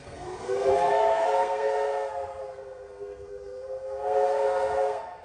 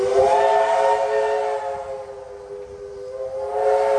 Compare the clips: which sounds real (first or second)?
second